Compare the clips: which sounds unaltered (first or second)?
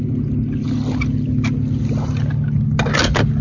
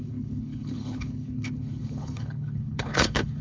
first